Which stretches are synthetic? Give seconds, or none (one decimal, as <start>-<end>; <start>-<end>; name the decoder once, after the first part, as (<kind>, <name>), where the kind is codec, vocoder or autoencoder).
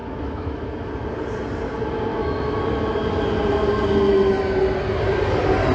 0.0-0.9 (autoencoder, DAC-VAE); 2.1-2.6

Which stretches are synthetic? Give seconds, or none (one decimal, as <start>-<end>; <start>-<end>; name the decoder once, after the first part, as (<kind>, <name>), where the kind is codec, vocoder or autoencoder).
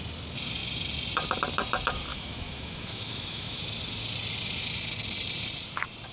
2.1-3.6 (autoencoder, DAC-VAE)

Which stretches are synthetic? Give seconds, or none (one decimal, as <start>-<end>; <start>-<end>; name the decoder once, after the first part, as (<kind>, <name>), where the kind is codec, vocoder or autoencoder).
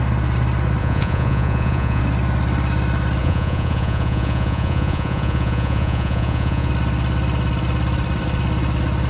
0.8-2.0 (vocoder, Vocos); 3.2-6.7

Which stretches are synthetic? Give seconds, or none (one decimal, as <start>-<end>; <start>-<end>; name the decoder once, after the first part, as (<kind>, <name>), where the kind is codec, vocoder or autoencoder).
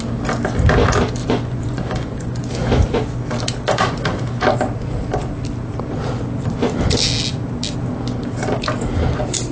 1.2-2.5 (vocoder, Vocos)